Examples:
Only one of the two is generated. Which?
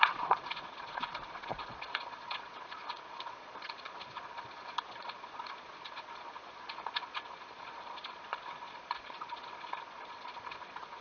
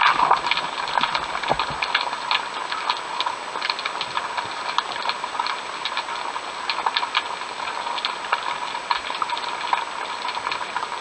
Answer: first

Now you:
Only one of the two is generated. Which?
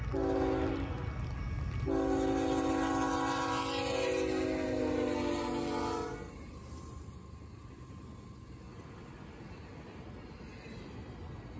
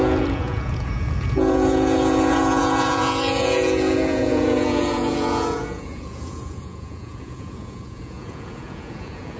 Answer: second